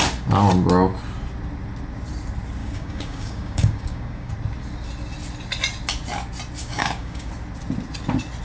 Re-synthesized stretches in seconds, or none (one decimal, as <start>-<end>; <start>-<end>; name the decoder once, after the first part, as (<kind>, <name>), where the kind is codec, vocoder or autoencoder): 2.6-4.3 (codec, DAC); 6.6-7.3